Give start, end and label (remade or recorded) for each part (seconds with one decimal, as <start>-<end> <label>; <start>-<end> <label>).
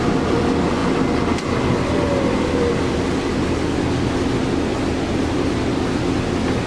0.0-6.7 recorded